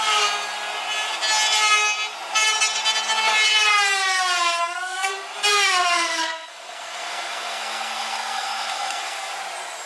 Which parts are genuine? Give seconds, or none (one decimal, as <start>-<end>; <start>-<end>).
0.0-4.6; 5.1-5.5; 9.3-9.9

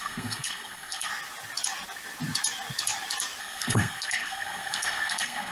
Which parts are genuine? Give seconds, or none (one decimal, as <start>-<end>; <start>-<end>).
1.1-3.4

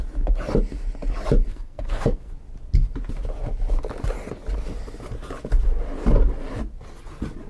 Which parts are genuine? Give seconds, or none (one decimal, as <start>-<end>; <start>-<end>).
0.0-1.5; 2.3-7.5

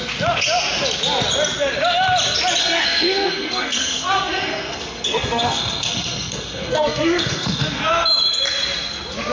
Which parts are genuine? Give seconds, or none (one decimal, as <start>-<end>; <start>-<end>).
0.0-2.6; 7.8-9.3

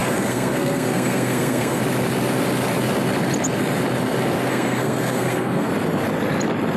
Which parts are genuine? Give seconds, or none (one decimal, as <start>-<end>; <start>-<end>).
1.8-4.5; 5.7-6.8

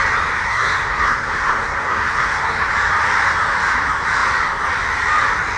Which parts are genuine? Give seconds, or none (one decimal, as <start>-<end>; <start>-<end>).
0.0-0.4; 2.7-5.6